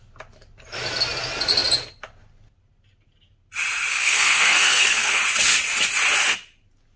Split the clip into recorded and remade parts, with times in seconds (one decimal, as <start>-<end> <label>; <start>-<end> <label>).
0.0-3.9 recorded; 3.9-5.2 remade; 5.2-7.0 recorded